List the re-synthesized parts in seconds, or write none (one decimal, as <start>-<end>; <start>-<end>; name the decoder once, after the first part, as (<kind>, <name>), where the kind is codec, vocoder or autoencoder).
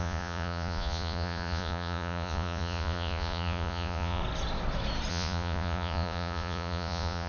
0.0-4.2 (vocoder, Vocos); 5.1-7.3